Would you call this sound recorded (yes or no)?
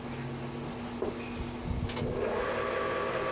yes